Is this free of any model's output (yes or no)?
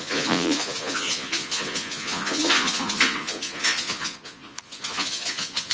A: no